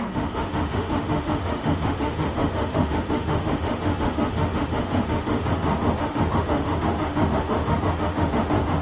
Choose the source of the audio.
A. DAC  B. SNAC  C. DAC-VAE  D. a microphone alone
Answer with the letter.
C